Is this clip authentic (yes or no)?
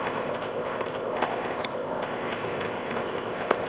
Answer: no